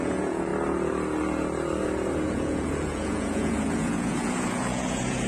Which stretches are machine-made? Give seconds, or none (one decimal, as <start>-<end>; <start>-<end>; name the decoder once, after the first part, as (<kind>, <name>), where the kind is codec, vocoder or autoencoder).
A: 0.0-0.5 (vocoder, Vocos); 2.3-5.3